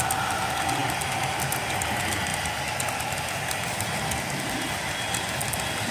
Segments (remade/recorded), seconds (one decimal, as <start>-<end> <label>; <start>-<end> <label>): 0.0-5.9 recorded